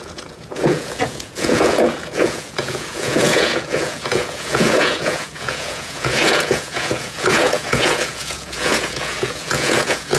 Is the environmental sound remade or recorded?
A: remade